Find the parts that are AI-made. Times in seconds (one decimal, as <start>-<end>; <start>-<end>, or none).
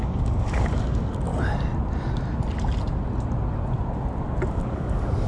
0.0-1.3; 4.5-5.3